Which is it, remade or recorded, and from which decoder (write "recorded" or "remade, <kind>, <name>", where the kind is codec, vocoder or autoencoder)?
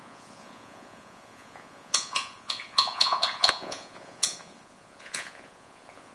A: remade, vocoder, Vocos